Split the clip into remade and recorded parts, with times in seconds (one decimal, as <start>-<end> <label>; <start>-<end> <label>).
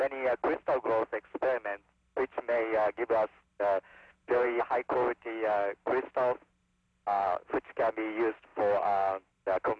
0.0-3.9 recorded; 3.9-4.6 remade; 4.6-9.8 recorded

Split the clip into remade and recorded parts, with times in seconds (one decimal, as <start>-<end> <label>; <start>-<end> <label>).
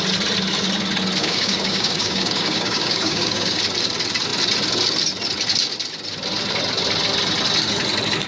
0.0-1.2 recorded; 1.2-3.6 remade; 3.6-8.3 recorded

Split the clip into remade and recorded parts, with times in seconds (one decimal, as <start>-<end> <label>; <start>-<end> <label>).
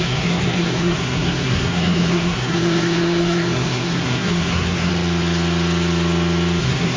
0.0-4.9 remade; 4.9-6.6 recorded; 6.6-7.0 remade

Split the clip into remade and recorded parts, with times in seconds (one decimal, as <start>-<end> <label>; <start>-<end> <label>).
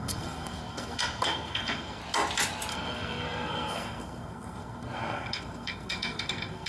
0.0-2.0 remade; 2.0-2.7 recorded; 2.7-6.7 remade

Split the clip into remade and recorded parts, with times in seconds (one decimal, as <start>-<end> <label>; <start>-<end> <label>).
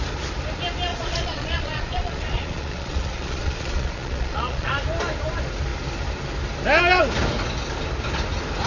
0.0-0.9 recorded; 0.9-4.7 remade; 4.7-8.7 recorded